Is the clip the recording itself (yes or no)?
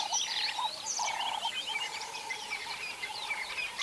no